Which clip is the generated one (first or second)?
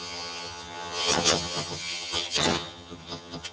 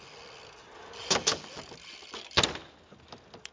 first